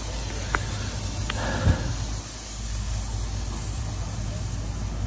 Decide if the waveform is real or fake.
real